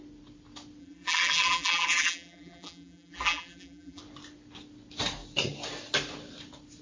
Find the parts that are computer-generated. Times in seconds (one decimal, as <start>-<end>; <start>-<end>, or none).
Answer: 0.8-4.0

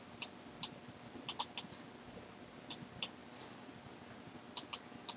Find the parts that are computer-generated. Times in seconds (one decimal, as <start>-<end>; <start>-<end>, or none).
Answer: none

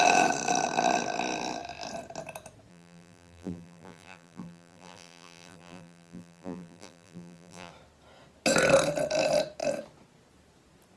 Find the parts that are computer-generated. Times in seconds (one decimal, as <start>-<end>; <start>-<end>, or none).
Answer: 2.7-7.7